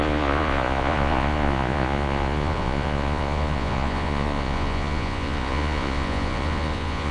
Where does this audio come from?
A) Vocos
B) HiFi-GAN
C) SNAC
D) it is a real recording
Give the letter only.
A